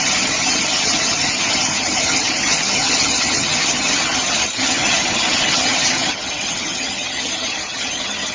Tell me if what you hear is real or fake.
fake